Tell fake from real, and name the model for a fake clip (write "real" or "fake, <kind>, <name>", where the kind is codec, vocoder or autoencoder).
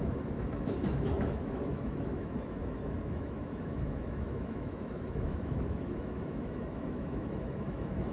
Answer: fake, autoencoder, DAC-VAE